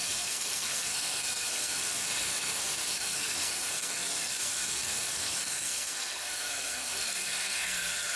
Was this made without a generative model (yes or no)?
no